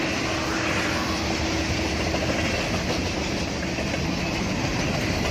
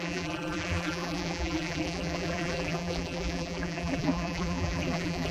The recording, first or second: first